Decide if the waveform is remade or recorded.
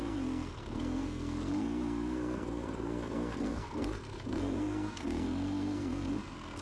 remade